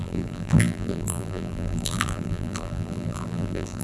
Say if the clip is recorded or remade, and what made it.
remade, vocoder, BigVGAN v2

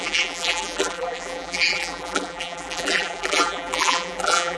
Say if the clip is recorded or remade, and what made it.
remade, vocoder, BigVGAN v2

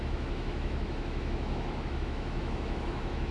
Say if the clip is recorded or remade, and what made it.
remade, autoencoder, DAC-VAE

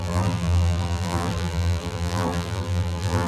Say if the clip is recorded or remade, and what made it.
remade, vocoder, BigVGAN v2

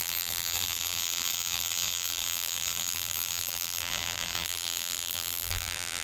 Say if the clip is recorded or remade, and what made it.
remade, vocoder, BigVGAN v2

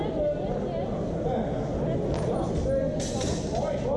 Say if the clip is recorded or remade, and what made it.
recorded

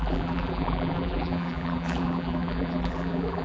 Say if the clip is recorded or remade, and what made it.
remade, vocoder, BigVGAN v2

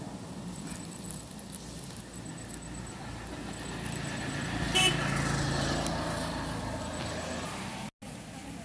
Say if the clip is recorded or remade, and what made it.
recorded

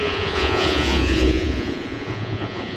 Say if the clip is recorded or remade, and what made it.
remade, vocoder, Vocos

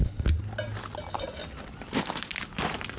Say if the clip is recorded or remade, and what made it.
recorded